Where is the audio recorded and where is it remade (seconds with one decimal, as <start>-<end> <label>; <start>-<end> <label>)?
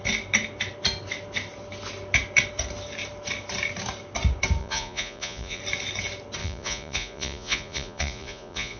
0.0-4.6 recorded; 4.6-5.6 remade; 5.6-6.4 recorded; 6.4-8.8 remade